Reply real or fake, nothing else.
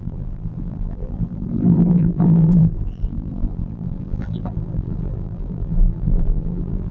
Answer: fake